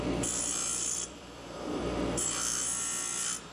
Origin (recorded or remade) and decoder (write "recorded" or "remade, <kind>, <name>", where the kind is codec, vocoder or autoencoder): remade, vocoder, BigVGAN v2